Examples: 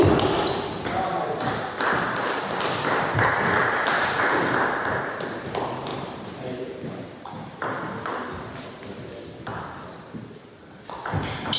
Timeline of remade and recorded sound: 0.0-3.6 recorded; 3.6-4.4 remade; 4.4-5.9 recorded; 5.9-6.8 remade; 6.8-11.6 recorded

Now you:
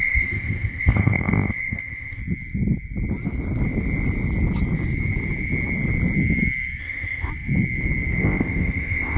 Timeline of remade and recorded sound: 0.0-2.2 remade; 2.2-6.8 recorded; 6.8-7.3 remade; 7.3-8.2 recorded; 8.2-9.2 remade